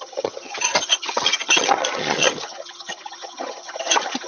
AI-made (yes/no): yes